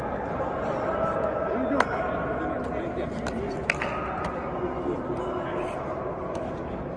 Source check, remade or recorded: recorded